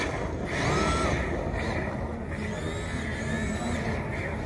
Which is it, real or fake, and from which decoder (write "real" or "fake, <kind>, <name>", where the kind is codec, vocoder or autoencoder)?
real